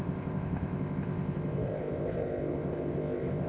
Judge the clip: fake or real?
fake